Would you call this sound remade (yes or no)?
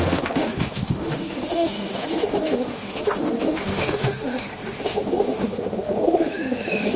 yes